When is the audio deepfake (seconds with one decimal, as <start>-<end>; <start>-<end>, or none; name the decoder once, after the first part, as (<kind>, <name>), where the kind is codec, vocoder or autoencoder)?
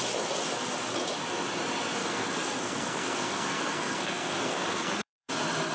2.0-5.3 (codec, SNAC)